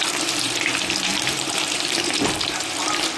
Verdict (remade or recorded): remade